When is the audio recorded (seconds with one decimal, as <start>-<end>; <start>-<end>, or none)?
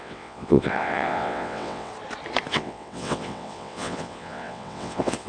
1.9-2.5